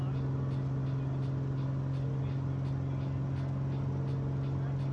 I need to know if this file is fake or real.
real